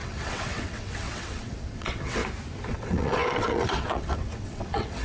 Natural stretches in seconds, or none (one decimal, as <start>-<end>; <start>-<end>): 2.2-2.7